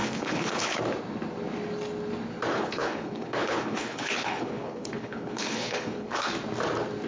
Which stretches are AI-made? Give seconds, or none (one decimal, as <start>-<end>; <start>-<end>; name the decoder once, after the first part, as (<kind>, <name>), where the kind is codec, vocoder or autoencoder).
0.0-0.8 (codec, HILCodec); 2.5-6.3